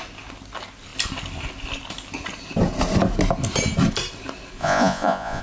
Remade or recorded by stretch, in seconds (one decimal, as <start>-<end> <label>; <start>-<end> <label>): 0.0-4.6 recorded; 4.6-5.4 remade